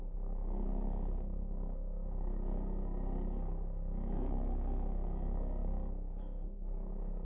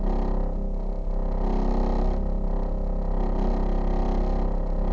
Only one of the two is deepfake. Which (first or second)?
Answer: first